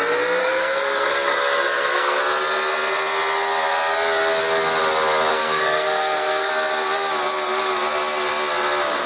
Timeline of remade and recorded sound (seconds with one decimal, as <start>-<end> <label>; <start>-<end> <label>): 0.0-0.4 recorded; 0.4-2.2 remade; 2.2-5.3 recorded; 5.3-6.5 remade; 6.5-9.1 recorded